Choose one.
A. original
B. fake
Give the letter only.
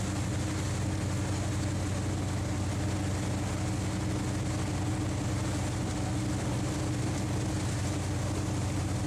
A